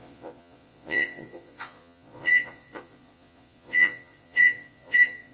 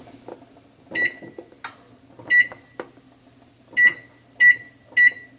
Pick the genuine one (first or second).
second